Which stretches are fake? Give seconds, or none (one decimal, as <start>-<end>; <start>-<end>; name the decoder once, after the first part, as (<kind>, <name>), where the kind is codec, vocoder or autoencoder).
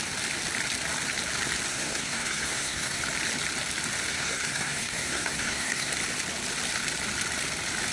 1.7-3.0 (codec, SNAC); 4.1-5.9